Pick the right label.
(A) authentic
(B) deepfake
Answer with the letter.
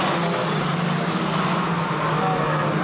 A